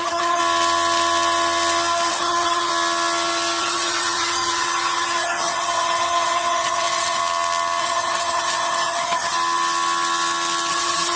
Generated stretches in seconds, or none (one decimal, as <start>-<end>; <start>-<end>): 0.0-0.4; 2.1-2.7; 3.6-7.2; 7.8-9.3; 10.7-11.2